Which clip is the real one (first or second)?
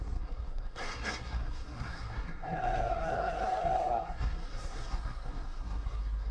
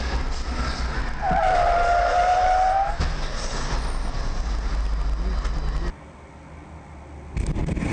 second